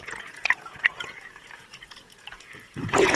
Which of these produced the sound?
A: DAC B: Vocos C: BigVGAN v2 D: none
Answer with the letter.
B